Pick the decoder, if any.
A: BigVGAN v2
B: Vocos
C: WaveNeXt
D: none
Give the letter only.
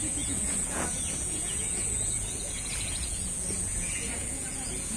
B